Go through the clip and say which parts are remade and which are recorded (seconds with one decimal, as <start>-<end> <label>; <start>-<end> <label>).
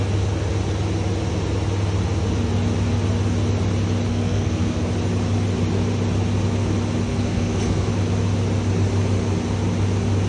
0.0-4.1 recorded; 4.1-4.9 remade; 4.9-7.1 recorded; 7.1-7.9 remade; 7.9-10.3 recorded